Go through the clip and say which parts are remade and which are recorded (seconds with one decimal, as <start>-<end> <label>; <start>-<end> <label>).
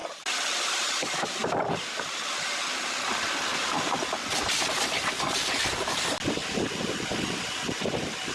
0.0-8.3 recorded